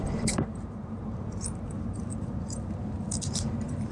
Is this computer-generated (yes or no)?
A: yes